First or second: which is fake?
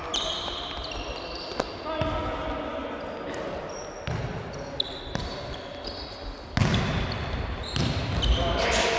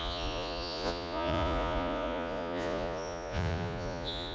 second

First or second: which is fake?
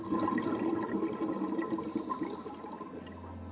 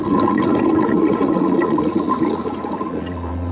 second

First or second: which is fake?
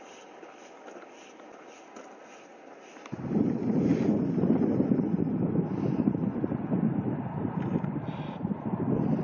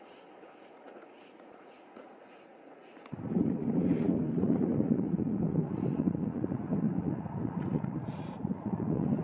second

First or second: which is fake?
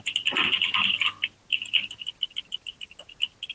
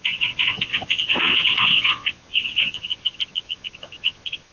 second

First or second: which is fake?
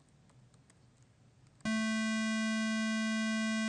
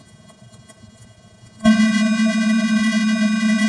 second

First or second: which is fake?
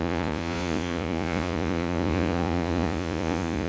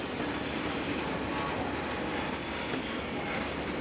first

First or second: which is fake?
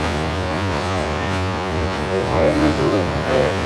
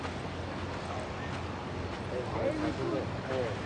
first